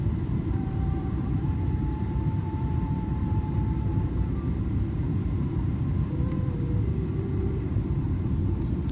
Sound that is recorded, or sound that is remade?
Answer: remade